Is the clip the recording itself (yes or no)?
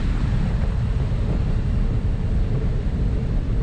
no